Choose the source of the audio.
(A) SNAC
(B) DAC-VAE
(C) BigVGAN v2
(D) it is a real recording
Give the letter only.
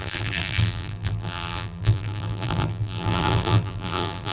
C